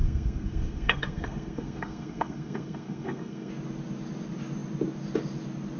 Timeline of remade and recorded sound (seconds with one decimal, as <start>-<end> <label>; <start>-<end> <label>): 0.0-3.5 remade; 3.5-5.8 recorded